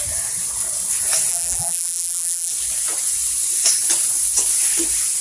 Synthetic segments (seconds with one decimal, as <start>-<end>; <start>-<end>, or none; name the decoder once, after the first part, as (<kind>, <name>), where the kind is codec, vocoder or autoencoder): 1.3-2.5 (vocoder, BigVGAN v2)